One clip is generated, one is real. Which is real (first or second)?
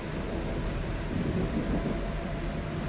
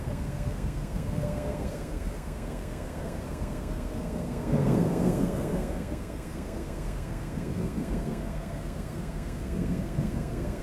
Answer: first